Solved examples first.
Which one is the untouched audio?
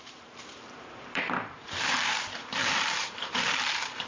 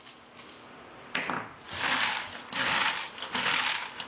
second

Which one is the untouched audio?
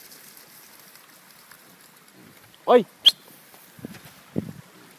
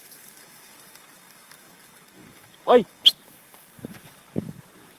first